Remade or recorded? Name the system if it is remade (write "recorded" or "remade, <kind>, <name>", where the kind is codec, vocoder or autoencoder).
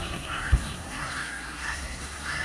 remade, codec, SNAC